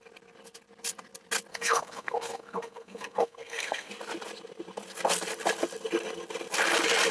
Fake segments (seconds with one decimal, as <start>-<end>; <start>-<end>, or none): 1.5-3.9